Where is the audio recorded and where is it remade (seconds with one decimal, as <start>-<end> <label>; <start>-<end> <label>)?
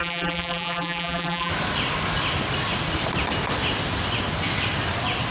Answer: 0.0-1.5 remade; 1.5-5.3 recorded